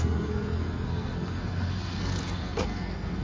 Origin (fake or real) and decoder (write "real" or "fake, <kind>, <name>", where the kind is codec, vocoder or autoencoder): fake, codec, SNAC